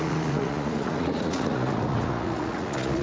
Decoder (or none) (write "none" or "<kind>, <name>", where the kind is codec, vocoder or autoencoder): vocoder, Vocos